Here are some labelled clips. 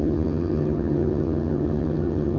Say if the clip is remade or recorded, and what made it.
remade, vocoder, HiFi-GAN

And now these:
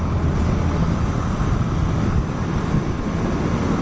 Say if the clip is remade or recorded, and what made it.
recorded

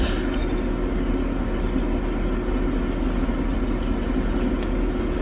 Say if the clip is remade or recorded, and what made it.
recorded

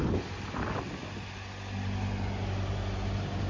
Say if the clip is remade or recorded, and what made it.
recorded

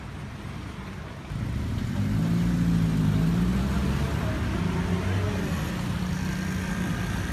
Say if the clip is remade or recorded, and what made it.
recorded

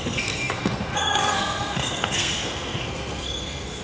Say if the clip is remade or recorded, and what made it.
remade, codec, SNAC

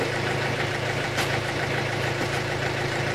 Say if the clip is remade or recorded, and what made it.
remade, vocoder, BigVGAN v2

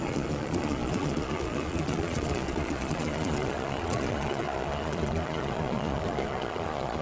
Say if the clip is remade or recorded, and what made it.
remade, vocoder, Vocos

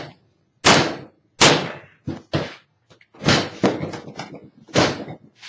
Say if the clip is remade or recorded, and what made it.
recorded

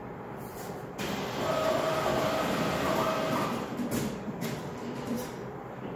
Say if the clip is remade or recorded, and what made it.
remade, vocoder, BigVGAN v2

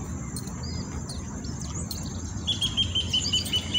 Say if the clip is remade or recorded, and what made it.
recorded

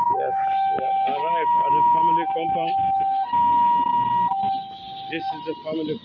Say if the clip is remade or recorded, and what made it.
recorded